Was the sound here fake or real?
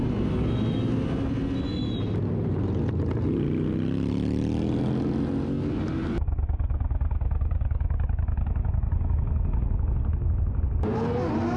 real